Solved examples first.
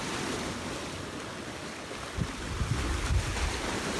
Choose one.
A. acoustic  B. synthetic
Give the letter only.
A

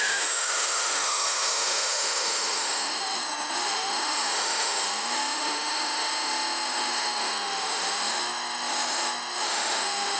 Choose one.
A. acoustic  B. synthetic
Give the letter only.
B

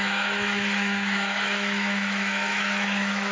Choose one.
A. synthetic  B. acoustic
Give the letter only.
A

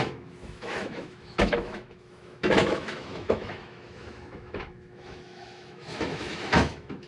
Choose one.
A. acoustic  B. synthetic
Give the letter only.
B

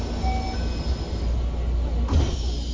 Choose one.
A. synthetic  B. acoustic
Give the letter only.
B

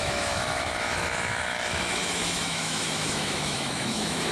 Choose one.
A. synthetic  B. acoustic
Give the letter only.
A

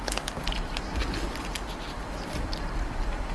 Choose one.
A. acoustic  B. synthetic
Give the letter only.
A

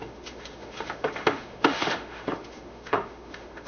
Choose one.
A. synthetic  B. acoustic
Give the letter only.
A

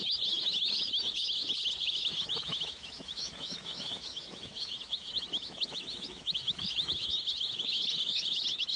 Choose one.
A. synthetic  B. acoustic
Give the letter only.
A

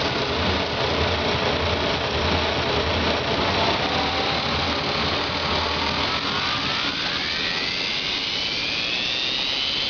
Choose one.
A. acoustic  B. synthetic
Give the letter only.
A